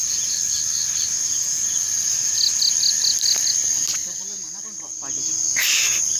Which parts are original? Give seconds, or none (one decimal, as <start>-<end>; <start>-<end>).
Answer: 0.0-4.0; 4.9-6.2